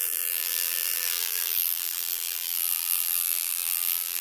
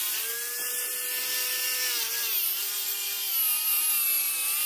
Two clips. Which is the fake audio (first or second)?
first